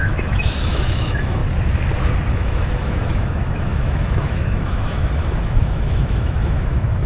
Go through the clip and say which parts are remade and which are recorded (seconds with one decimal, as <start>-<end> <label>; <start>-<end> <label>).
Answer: 0.0-1.4 remade; 1.4-2.3 recorded; 2.3-7.1 remade